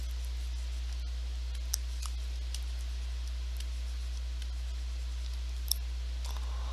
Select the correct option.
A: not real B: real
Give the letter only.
B